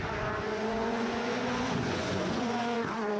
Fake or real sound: fake